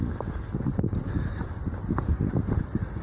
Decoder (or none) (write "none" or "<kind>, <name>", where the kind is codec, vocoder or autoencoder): none